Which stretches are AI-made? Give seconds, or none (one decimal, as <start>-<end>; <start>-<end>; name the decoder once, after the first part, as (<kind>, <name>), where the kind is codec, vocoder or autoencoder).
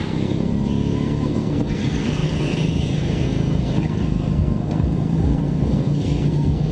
0.0-6.7 (codec, SNAC)